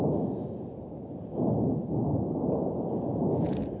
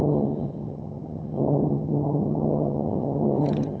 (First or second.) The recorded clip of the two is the first